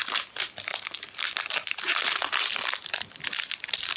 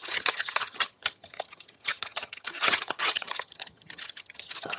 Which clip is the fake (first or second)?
second